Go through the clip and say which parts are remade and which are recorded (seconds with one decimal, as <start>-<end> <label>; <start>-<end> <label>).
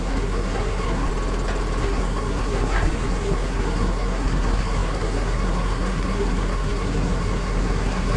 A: 0.0-1.1 remade; 1.1-1.8 recorded; 1.8-8.2 remade